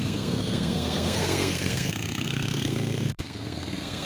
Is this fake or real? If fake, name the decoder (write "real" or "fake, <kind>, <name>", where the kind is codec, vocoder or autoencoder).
fake, codec, SNAC